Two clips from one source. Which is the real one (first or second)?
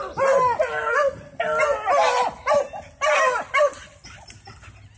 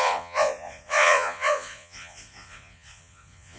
first